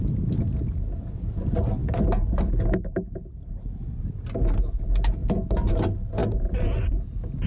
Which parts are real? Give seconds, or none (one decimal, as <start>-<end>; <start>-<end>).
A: 0.0-7.5